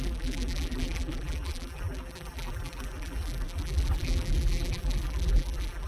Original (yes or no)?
no